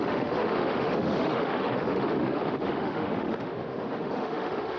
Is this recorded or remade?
remade